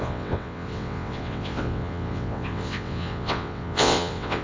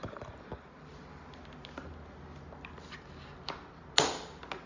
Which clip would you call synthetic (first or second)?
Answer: first